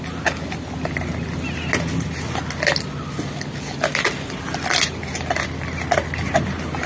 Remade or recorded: recorded